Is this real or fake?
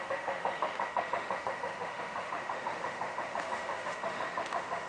fake